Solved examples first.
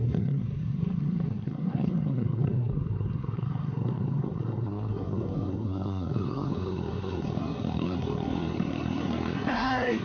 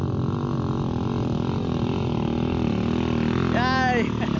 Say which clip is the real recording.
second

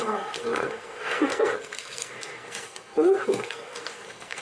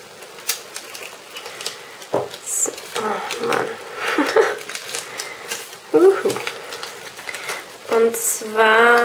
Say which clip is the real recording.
second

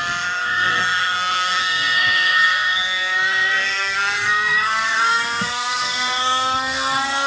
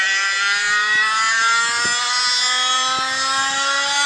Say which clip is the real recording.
second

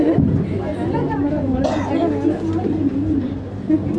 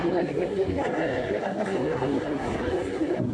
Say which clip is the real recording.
first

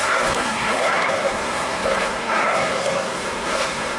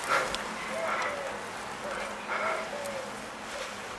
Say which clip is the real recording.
second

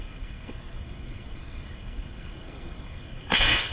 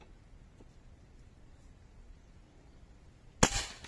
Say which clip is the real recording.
second